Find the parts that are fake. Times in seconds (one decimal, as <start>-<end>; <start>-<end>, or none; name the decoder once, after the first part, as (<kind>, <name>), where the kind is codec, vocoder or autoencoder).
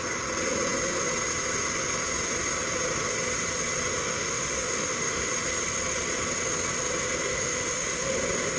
4.0-5.3 (autoencoder, DAC-VAE); 7.3-8.1